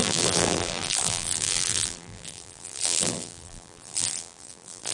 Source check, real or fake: fake